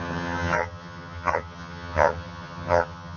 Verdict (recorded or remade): remade